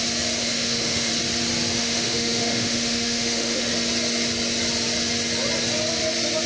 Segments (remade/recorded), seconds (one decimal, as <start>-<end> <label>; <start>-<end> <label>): 0.0-0.4 recorded; 0.4-1.1 remade; 1.1-1.7 recorded; 1.7-3.7 remade; 3.7-6.5 recorded